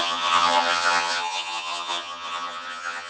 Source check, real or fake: fake